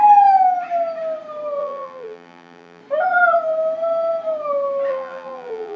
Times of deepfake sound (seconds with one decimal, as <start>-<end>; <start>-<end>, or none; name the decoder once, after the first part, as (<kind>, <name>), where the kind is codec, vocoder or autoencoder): 1.6-2.8 (vocoder, BigVGAN v2); 4.9-5.8